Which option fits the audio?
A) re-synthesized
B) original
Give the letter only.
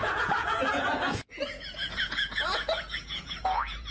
A